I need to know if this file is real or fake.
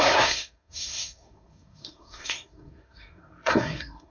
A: fake